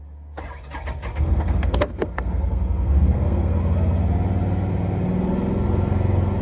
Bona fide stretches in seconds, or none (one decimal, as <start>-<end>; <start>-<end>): 0.0-1.1; 3.6-6.4